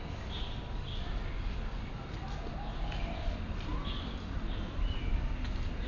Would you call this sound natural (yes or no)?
yes